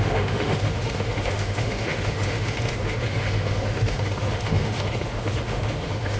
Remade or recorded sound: remade